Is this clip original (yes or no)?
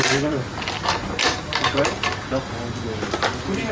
yes